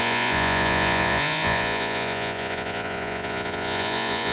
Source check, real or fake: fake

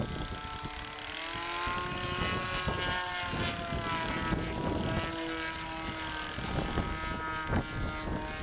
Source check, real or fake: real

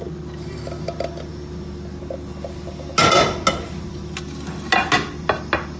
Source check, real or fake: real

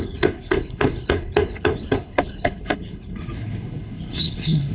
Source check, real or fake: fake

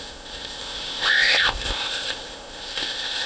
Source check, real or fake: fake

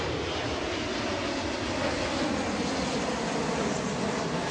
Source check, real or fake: real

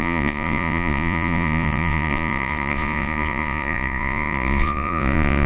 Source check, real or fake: fake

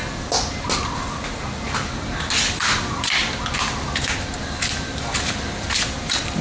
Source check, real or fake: real